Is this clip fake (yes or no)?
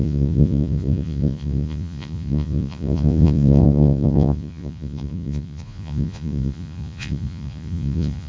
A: yes